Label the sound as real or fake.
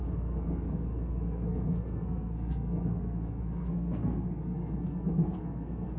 fake